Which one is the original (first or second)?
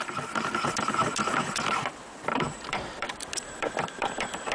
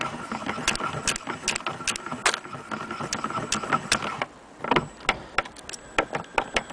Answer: second